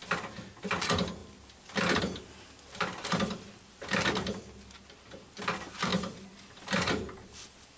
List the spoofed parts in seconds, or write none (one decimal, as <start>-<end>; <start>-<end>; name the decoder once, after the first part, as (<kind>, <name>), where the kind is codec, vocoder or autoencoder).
5.9-7.8 (vocoder, BigVGAN v2)